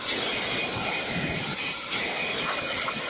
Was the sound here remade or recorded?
recorded